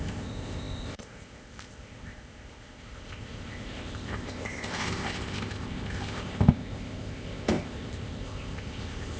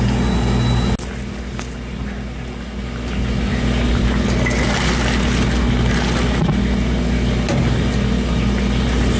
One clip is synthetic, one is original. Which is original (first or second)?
second